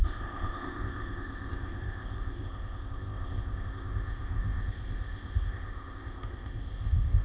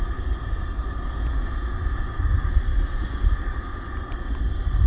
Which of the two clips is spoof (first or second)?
first